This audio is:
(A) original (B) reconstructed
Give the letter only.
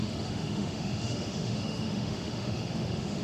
B